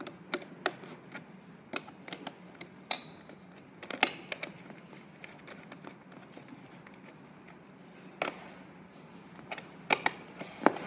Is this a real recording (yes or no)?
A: yes